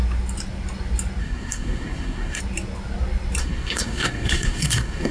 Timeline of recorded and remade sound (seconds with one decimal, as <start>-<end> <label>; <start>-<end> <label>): 0.0-1.2 recorded; 1.2-2.4 remade; 2.4-3.4 recorded; 3.4-5.1 remade